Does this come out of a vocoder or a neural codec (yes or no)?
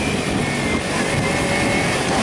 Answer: no